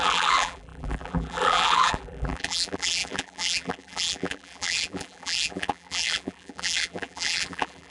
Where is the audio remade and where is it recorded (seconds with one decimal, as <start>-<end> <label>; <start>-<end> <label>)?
0.0-7.9 remade